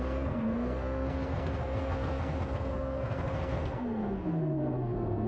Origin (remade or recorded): remade